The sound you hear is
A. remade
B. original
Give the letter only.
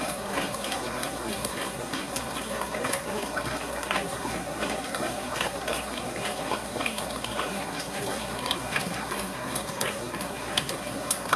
A